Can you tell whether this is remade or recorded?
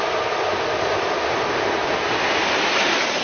recorded